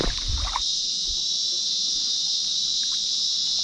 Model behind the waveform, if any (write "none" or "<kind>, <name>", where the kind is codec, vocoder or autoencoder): none